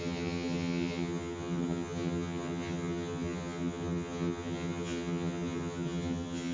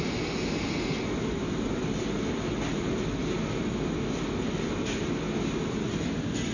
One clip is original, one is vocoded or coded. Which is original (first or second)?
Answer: second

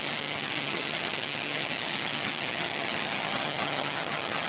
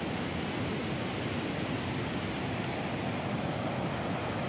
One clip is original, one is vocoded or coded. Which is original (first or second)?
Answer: second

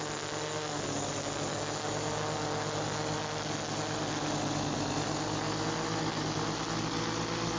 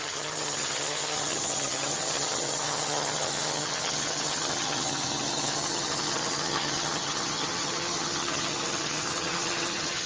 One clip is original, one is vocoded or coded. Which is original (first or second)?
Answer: first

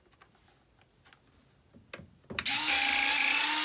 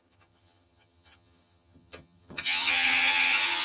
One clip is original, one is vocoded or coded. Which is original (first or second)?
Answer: first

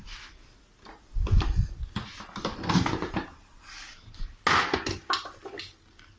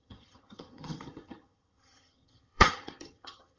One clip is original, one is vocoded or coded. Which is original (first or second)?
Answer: first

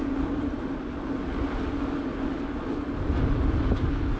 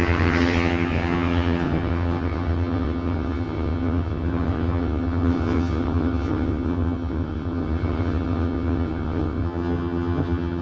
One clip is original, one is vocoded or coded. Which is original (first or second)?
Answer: first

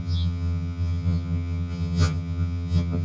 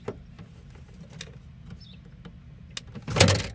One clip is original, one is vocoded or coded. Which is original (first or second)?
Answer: second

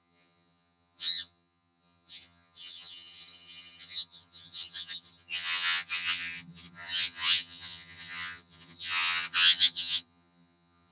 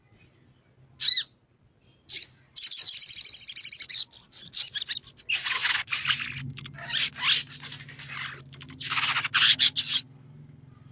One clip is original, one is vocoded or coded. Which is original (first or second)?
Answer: second